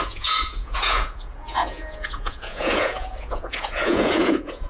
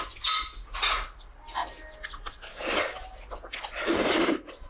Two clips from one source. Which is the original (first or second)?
second